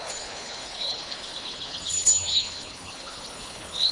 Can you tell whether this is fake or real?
fake